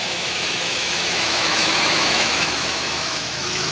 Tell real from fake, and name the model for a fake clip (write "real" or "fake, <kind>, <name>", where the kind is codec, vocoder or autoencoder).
fake, autoencoder, DAC-VAE